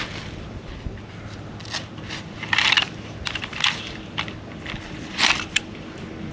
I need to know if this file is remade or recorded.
remade